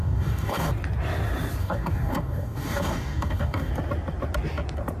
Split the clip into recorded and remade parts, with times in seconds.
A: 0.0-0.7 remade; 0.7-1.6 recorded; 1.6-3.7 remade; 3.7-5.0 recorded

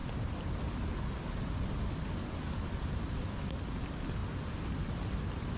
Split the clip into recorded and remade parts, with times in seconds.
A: 0.0-5.6 recorded

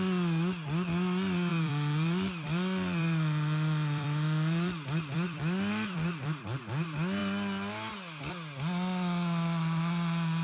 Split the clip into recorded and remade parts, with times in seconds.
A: 0.0-1.5 recorded; 1.5-6.6 remade; 6.6-10.4 recorded

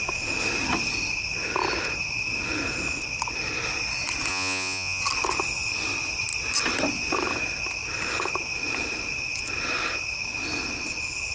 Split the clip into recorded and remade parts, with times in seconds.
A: 0.0-4.3 recorded; 4.3-5.0 remade; 5.0-11.3 recorded

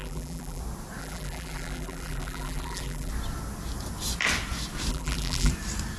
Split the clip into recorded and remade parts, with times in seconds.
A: 0.0-0.6 remade; 0.6-1.0 recorded; 1.0-3.1 remade; 3.1-4.9 recorded; 4.9-5.5 remade; 5.5-6.0 recorded

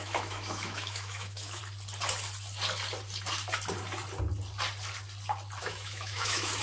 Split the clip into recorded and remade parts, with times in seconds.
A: 0.0-1.6 remade; 1.6-5.6 recorded; 5.6-6.6 remade

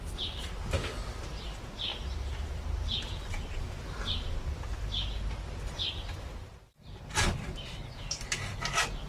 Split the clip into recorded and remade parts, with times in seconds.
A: 0.0-9.1 recorded

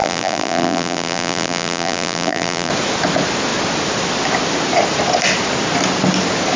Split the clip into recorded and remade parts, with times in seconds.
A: 0.0-2.7 remade; 2.7-6.6 recorded